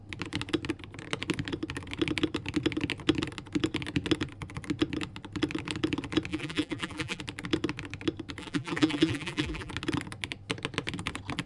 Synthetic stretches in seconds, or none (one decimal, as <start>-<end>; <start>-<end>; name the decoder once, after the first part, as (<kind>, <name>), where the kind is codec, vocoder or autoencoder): 6.3-7.2 (vocoder, BigVGAN v2); 8.4-9.7